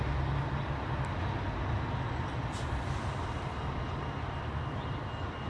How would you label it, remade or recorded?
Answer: recorded